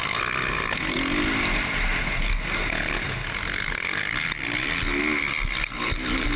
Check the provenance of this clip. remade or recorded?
recorded